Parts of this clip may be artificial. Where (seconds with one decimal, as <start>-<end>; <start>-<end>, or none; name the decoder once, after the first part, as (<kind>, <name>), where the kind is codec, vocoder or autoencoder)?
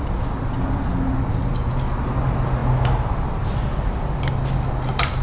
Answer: none